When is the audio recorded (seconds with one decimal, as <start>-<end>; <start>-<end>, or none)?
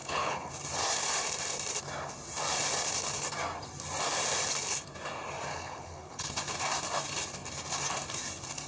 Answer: 0.5-5.5; 6.3-8.7